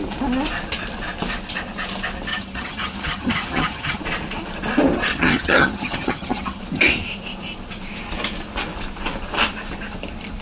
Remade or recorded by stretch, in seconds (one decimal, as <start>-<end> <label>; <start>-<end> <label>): 0.0-2.3 recorded; 2.3-4.0 remade; 4.0-5.1 recorded; 5.1-6.6 remade; 6.6-10.4 recorded